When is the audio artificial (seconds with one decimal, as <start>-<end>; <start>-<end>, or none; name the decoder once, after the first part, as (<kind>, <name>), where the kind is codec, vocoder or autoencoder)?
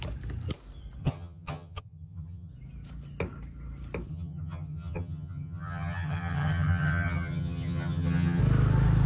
1.0-2.5 (vocoder, HiFi-GAN); 4.1-8.4